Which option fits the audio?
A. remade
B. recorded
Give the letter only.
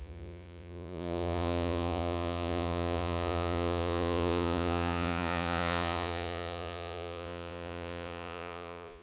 A